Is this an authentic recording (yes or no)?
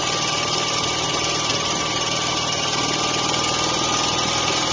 yes